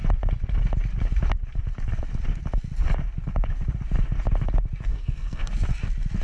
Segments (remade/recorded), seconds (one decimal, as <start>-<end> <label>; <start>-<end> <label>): 0.0-4.9 recorded; 4.9-5.5 remade; 5.5-6.2 recorded